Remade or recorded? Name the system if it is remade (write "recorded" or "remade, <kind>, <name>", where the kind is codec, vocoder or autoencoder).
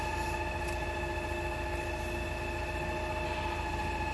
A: recorded